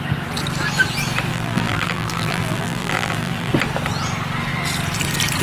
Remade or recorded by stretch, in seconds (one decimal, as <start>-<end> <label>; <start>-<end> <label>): 0.0-1.3 recorded; 1.3-3.5 remade; 3.5-5.4 recorded